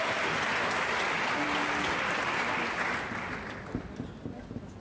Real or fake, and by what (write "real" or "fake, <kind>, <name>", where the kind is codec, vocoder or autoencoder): real